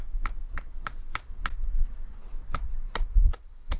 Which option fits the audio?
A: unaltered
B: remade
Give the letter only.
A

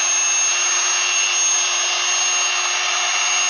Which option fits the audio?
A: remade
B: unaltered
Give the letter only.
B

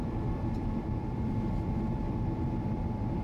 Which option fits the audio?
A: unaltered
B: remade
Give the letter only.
B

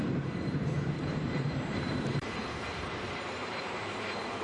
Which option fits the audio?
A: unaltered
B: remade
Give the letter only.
B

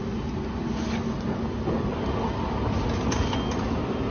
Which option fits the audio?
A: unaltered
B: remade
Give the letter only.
A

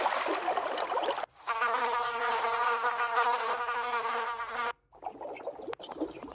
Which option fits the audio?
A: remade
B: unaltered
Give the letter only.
B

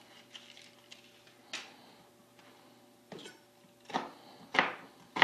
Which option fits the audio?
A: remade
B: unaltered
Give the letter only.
B